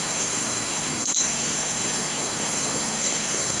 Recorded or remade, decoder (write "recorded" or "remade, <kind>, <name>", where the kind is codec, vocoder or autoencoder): remade, codec, SNAC